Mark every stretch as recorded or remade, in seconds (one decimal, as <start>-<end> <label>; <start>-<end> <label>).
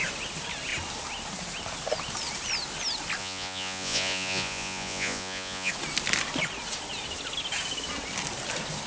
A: 0.0-3.2 recorded; 3.2-5.7 remade; 5.7-8.9 recorded